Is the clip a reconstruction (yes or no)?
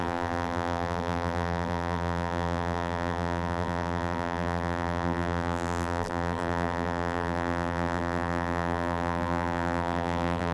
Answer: yes